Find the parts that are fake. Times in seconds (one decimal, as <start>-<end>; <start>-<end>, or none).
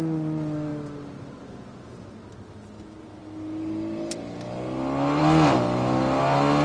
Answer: none